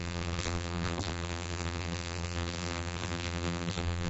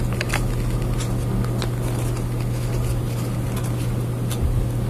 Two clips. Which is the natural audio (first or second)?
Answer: second